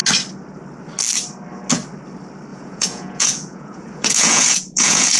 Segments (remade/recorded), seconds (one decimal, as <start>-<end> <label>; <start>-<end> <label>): 0.0-2.5 recorded; 2.5-5.2 remade